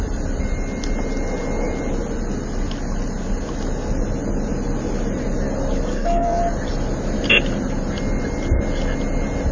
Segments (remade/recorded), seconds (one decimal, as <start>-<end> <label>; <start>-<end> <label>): 0.0-5.9 recorded; 5.9-6.4 remade; 6.4-9.5 recorded